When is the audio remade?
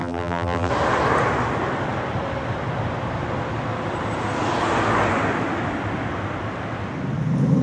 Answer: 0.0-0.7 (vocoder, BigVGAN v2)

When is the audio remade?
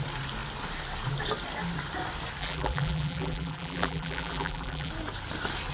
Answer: 2.4-4.9 (vocoder, BigVGAN v2)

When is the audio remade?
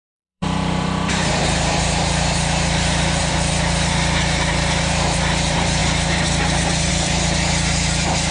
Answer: 0.0-8.3 (vocoder, BigVGAN v2)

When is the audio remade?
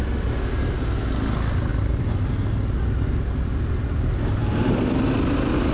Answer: 1.7-5.1 (vocoder, BigVGAN v2)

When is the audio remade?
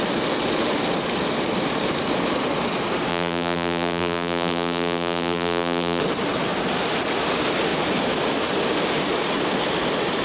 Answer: 3.1-6.0 (vocoder, BigVGAN v2)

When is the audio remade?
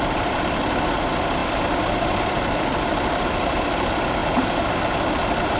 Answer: 0.0-5.6 (vocoder, BigVGAN v2)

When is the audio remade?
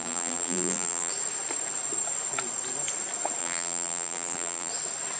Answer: 0.0-1.1 (vocoder, BigVGAN v2); 3.4-4.7